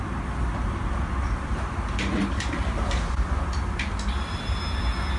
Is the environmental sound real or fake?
fake